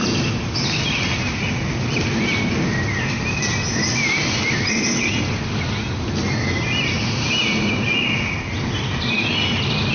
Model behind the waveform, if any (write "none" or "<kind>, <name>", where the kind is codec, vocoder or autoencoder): none